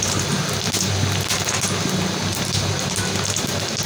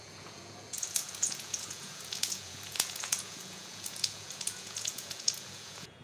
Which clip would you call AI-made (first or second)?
second